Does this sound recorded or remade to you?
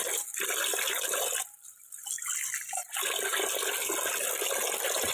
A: recorded